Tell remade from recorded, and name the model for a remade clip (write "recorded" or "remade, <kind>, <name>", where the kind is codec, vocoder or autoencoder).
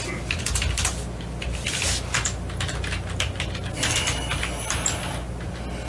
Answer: recorded